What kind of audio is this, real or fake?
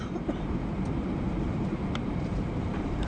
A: fake